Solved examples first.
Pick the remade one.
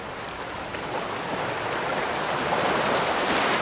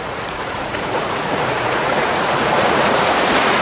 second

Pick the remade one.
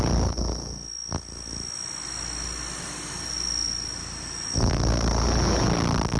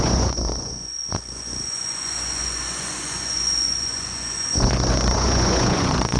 second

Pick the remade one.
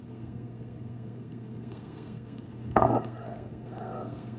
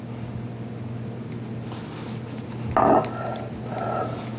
first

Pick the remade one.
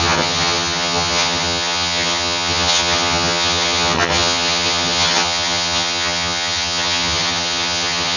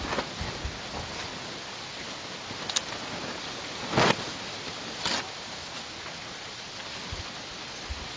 first